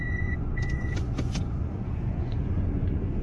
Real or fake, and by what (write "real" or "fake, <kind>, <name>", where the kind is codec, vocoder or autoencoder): fake, vocoder, Vocos